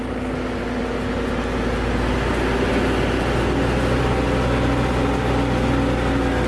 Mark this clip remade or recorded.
recorded